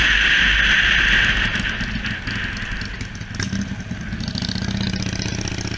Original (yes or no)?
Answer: yes